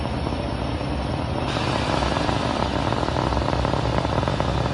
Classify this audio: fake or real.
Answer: real